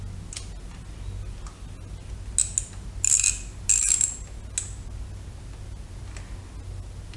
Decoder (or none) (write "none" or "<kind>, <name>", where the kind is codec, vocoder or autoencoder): none